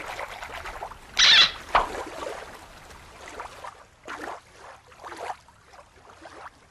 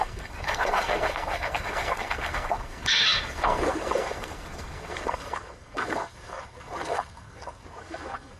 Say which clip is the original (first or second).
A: first